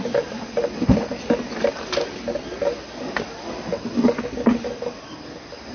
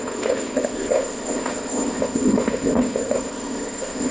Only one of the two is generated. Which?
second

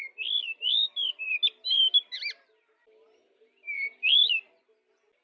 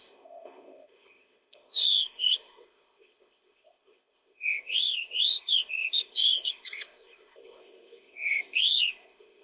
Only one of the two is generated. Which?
second